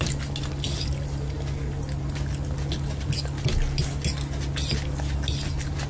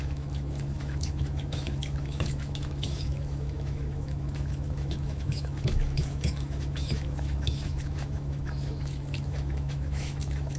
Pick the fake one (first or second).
second